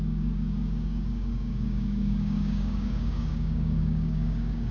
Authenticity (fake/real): fake